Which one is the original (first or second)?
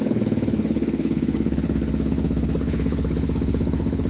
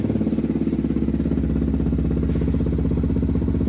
second